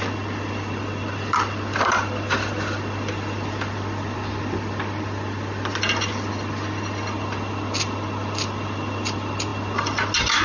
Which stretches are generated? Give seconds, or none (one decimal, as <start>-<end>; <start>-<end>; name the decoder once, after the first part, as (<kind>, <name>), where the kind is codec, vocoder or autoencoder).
none